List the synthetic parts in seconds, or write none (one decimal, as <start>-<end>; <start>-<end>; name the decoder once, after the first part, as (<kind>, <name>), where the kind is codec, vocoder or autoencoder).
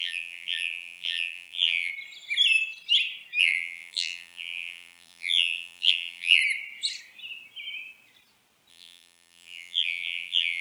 0.0-1.9 (vocoder, BigVGAN v2); 3.4-6.4; 8.7-10.6